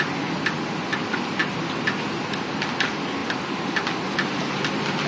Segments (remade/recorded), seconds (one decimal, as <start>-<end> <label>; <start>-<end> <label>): 0.0-5.1 recorded

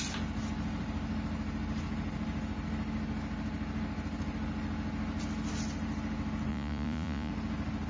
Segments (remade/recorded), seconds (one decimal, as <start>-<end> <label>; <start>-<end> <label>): 0.0-6.5 recorded; 6.5-7.3 remade; 7.3-7.9 recorded

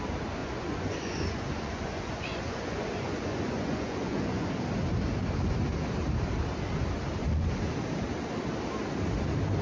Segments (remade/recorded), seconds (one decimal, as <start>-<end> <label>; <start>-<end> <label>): 0.0-0.4 recorded; 0.4-4.5 remade; 4.5-7.2 recorded; 7.2-7.7 remade; 7.7-9.6 recorded

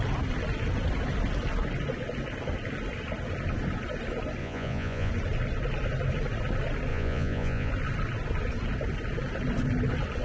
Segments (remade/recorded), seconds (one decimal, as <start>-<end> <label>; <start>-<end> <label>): 0.0-4.4 recorded; 4.4-5.1 remade; 5.1-6.9 recorded; 6.9-7.7 remade; 7.7-10.2 recorded

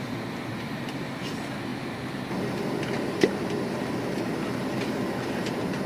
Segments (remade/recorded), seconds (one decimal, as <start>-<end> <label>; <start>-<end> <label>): 0.0-5.9 recorded